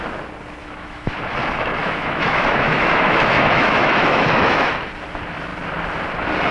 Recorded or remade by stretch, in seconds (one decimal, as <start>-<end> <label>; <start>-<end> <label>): 0.0-0.6 recorded; 0.6-1.2 remade; 1.2-1.8 recorded; 1.8-4.7 remade; 4.7-6.5 recorded